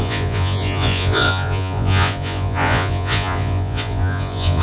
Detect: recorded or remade remade